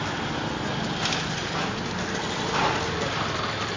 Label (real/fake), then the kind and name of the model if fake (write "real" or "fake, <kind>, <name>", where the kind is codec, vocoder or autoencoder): real